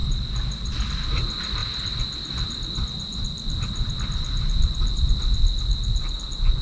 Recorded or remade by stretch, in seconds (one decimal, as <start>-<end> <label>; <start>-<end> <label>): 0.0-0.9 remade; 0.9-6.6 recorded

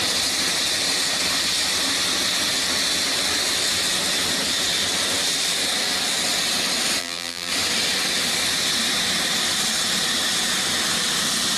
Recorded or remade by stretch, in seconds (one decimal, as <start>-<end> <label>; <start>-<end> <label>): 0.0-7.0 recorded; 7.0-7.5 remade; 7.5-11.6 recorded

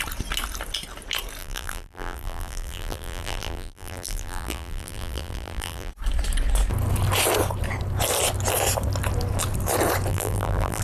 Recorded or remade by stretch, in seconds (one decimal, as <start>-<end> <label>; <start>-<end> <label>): 0.0-1.4 recorded; 1.4-5.9 remade; 5.9-10.1 recorded; 10.1-10.8 remade

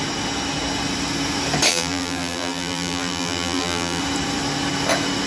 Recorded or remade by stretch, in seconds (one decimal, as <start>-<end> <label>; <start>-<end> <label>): 0.0-1.7 recorded; 1.7-4.0 remade; 4.0-5.3 recorded

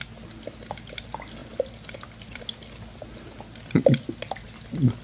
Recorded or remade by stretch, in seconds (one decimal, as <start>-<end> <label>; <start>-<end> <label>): 0.0-1.4 recorded; 1.4-2.4 remade; 2.4-5.0 recorded